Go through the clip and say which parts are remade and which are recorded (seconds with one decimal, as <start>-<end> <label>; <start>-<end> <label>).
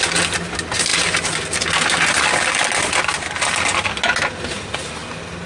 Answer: 0.0-0.9 recorded; 0.9-2.1 remade; 2.1-5.0 recorded; 5.0-5.5 remade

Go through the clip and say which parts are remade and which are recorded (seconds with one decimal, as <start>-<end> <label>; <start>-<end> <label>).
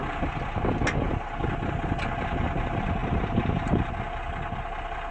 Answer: 0.0-3.0 recorded; 3.0-3.9 remade; 3.9-5.1 recorded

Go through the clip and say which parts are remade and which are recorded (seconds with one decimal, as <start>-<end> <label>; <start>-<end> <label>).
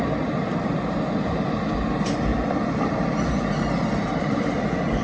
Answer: 0.0-5.0 remade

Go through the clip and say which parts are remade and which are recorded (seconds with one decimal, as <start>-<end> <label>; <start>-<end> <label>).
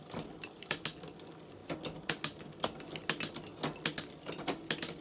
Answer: 0.0-5.0 recorded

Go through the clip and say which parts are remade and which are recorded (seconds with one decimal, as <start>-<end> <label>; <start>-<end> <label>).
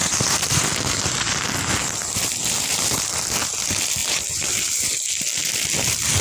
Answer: 0.0-0.6 remade; 0.6-4.0 recorded; 4.0-4.5 remade; 4.5-6.2 recorded